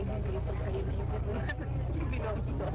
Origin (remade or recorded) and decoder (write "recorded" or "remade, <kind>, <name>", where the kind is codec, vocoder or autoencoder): recorded